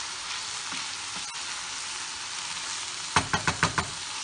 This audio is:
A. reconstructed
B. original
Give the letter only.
B